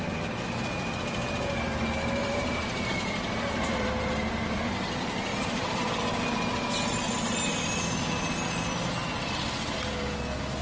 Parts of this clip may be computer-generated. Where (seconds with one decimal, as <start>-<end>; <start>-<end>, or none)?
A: 2.2-4.6; 5.3-5.8